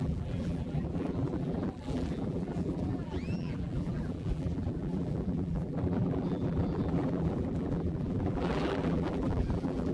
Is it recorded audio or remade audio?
remade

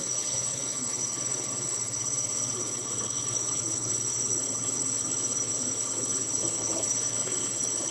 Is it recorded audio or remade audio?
remade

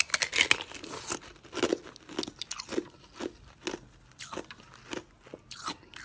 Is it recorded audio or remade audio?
recorded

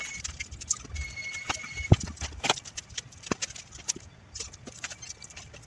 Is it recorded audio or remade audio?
recorded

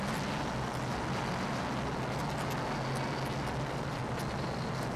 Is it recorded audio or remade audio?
recorded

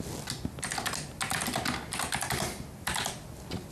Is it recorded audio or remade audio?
recorded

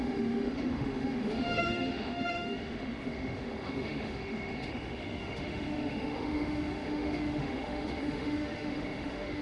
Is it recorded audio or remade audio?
remade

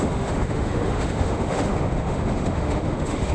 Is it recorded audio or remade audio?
remade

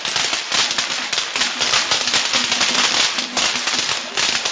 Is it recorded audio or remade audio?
recorded